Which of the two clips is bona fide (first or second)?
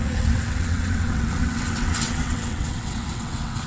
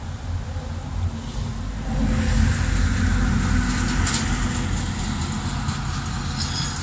second